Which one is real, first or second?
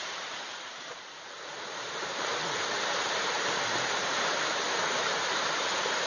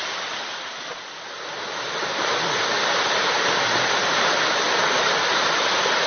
second